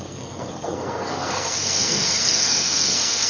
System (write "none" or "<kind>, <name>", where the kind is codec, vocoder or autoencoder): codec, SNAC